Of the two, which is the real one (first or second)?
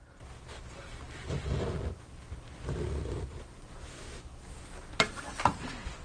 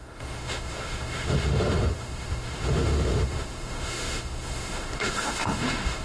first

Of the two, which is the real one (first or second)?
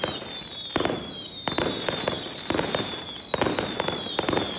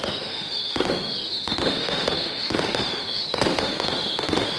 first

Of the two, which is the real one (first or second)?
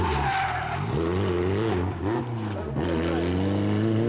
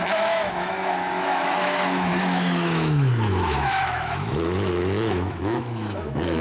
first